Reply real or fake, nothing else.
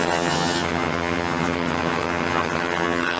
fake